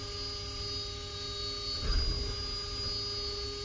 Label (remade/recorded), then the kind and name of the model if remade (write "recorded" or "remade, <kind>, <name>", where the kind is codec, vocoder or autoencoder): recorded